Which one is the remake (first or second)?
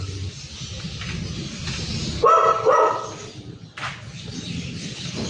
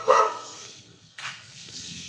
second